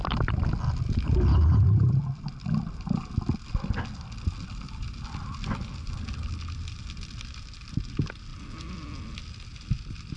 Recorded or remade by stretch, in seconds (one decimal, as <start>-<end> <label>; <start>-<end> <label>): 0.0-10.2 recorded